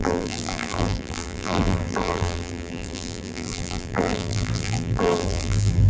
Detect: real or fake fake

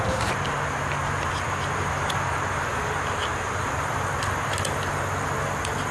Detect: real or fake real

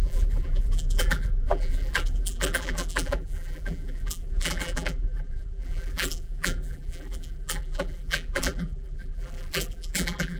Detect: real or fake fake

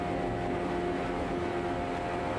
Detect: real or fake real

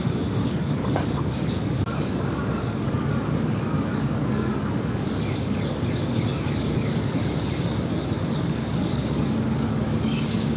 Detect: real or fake fake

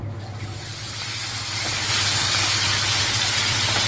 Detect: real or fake real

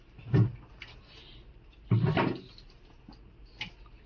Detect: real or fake real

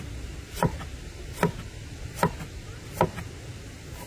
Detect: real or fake real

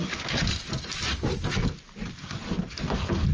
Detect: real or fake real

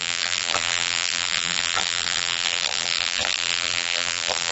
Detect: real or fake fake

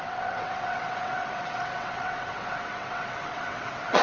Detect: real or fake fake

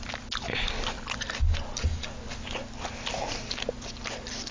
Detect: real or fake real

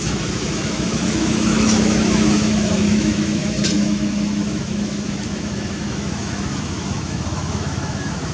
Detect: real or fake fake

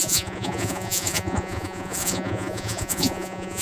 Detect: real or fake fake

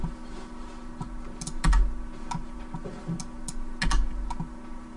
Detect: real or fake real